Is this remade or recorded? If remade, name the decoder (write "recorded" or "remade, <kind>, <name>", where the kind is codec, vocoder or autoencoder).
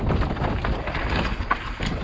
recorded